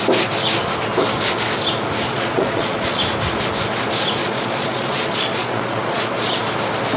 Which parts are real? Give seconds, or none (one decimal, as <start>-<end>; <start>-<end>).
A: 0.0-2.1; 3.0-4.2; 6.4-7.0